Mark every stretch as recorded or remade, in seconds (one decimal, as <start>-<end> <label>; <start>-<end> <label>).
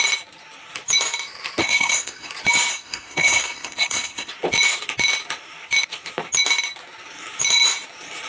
0.0-1.6 recorded; 1.6-2.3 remade; 2.3-2.7 recorded; 2.7-4.3 remade; 4.3-8.3 recorded